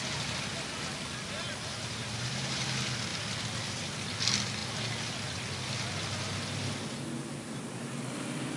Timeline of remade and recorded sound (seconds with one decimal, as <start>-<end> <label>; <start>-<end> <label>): 0.0-8.6 recorded